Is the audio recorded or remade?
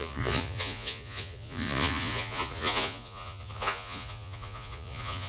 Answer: remade